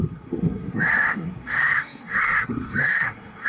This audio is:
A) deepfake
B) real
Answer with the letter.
A